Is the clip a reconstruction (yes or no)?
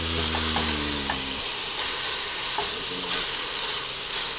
no